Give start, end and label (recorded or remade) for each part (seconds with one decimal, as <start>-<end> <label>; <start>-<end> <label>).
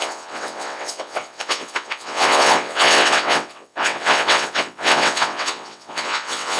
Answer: 0.0-6.6 remade